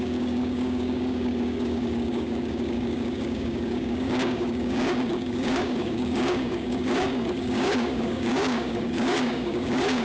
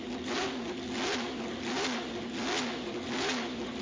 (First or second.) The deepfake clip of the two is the first